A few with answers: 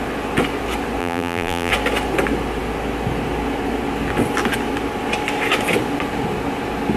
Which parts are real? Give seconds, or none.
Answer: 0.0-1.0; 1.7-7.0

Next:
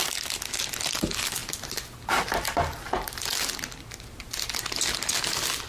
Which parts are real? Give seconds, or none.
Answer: 0.0-5.7

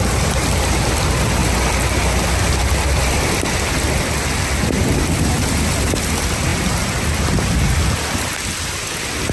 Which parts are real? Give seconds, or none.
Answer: 1.4-5.2; 6.5-8.9

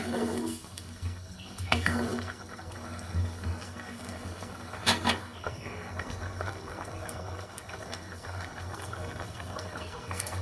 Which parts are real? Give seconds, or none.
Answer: none

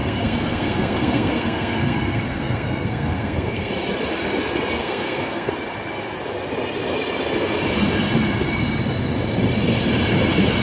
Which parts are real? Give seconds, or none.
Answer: 3.7-4.8; 5.5-10.6